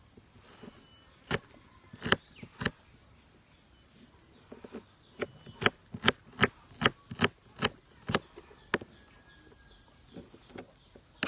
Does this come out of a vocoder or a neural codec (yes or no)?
no